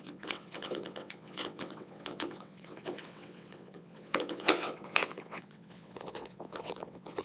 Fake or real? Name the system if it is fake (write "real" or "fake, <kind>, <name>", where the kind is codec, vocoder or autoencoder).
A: fake, vocoder, WaveNeXt